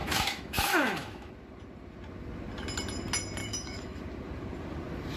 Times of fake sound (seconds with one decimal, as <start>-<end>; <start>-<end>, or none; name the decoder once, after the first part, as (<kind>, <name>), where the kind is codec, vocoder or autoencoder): 0.0-1.3 (autoencoder, DAC-VAE); 3.4-4.0